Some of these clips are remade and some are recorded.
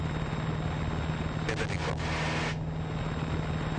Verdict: recorded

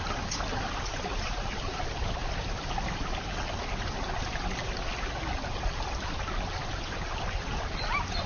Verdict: recorded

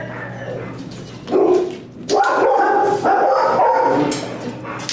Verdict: recorded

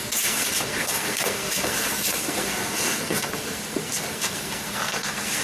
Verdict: remade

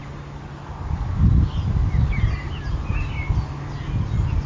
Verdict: recorded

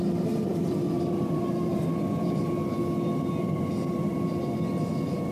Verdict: recorded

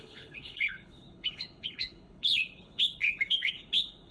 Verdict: remade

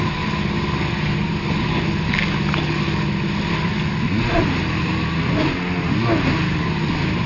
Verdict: recorded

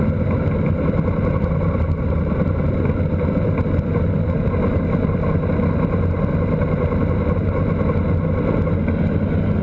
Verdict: recorded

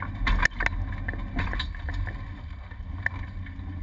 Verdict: recorded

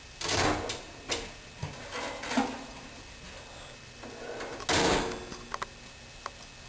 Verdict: recorded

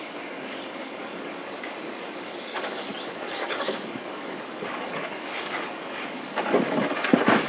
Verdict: remade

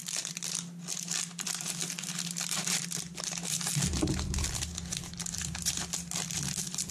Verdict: recorded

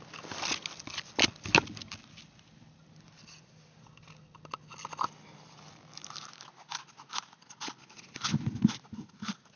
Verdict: recorded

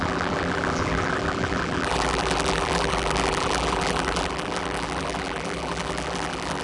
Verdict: remade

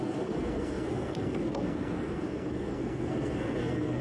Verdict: remade